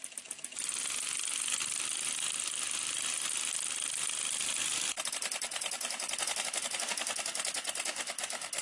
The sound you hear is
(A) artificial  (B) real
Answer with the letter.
B